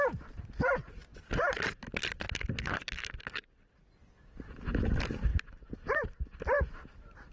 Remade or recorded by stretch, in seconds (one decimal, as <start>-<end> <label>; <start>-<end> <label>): 0.0-1.1 recorded; 1.1-3.2 remade; 3.2-5.3 recorded; 5.3-6.6 remade; 6.6-7.3 recorded